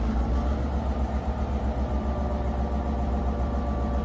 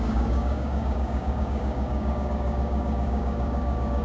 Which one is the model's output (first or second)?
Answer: second